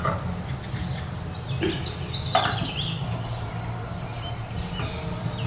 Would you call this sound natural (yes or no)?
yes